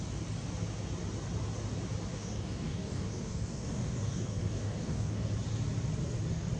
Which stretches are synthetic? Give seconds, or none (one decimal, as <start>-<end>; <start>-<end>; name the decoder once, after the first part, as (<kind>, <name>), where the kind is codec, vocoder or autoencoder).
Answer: 2.1-5.3 (codec, DAC)